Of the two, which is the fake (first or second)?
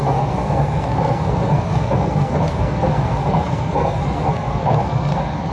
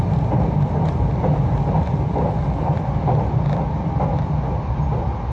first